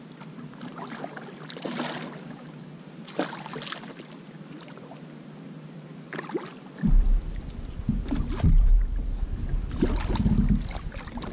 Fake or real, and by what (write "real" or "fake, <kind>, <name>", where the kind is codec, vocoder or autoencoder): real